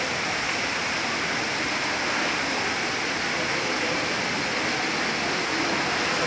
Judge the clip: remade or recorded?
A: recorded